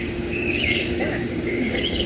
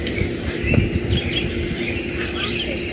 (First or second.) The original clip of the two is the second